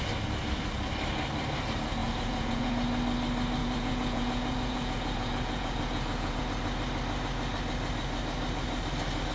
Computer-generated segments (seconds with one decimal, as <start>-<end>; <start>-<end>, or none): 2.0-2.7; 3.6-6.4

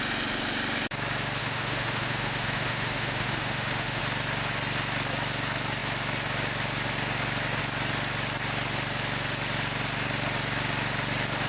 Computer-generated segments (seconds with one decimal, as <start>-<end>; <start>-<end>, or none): 1.4-4.0